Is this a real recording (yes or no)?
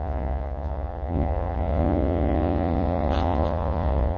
no